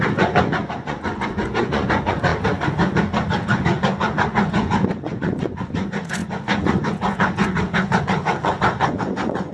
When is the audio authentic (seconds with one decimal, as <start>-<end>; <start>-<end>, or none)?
none